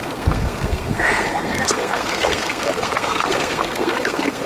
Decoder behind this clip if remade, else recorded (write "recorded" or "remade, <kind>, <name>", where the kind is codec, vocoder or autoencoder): remade, codec, SNAC